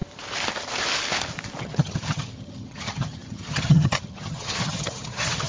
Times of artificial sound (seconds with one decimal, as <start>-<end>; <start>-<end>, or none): 1.6-5.5